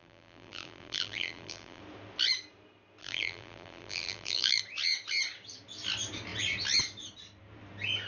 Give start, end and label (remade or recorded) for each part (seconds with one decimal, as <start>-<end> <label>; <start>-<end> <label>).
0.0-1.8 remade; 1.8-3.0 recorded; 3.0-4.6 remade; 4.6-8.1 recorded